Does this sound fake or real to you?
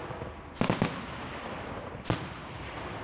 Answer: real